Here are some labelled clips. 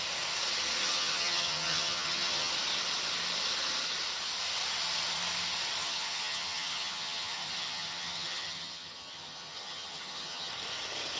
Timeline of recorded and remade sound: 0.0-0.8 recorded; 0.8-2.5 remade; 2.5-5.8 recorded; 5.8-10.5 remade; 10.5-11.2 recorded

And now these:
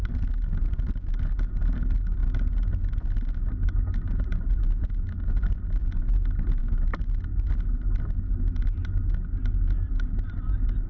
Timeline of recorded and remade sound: 0.0-10.9 recorded

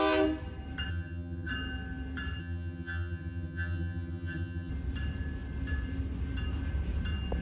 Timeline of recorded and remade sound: 0.0-0.9 recorded; 0.9-1.5 remade; 1.5-2.4 recorded; 2.4-4.7 remade; 4.7-7.4 recorded